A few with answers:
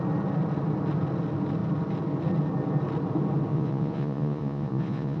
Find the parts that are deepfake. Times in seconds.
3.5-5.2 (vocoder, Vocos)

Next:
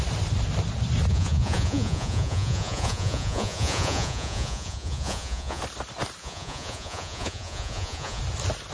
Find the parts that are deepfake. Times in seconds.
1.1-5.6 (vocoder, Vocos); 6.2-8.2

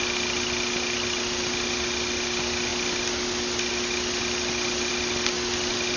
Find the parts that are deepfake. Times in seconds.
none

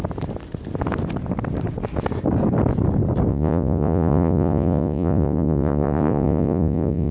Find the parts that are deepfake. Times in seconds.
3.3-7.1 (vocoder, Vocos)

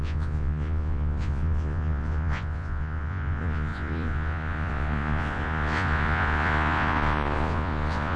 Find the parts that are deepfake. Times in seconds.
0.0-8.2 (vocoder, Vocos)

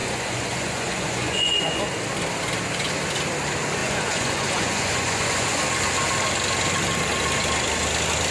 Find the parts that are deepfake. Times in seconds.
0.0-1.8 (vocoder, Vocos); 3.8-5.6